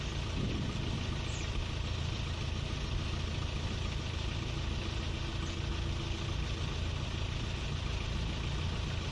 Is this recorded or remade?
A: recorded